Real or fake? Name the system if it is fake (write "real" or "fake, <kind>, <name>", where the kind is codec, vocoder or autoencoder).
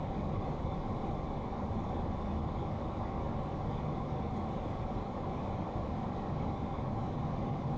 fake, codec, DAC